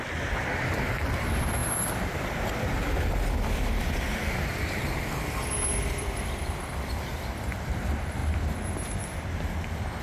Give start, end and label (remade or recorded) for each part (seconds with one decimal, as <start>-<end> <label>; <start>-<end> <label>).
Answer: 0.0-1.6 remade; 1.6-2.5 recorded; 2.5-10.0 remade